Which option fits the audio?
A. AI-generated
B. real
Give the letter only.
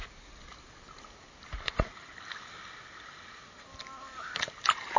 B